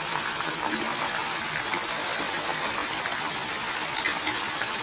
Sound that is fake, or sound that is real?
real